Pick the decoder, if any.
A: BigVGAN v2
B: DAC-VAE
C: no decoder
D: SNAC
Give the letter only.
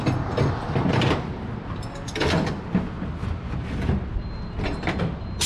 C